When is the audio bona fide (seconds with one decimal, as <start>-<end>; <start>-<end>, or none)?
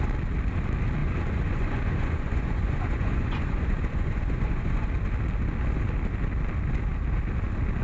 0.0-1.0; 4.9-7.8